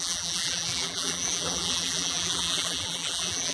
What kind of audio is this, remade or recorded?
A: remade